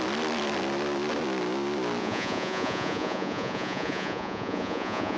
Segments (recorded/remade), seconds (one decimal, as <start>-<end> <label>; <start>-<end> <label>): 0.0-2.0 recorded; 2.0-5.2 remade